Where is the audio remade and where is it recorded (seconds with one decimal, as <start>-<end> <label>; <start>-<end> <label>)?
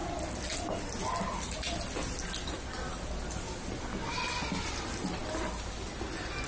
0.0-6.5 recorded